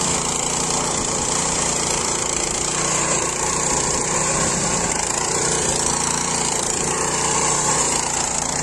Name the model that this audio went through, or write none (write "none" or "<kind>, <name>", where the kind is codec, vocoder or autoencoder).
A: vocoder, BigVGAN v2